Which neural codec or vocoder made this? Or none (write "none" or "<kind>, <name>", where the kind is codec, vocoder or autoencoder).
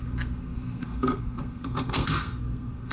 codec, SNAC